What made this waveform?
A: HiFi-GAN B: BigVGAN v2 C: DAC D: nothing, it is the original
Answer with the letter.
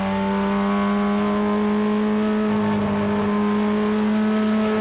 D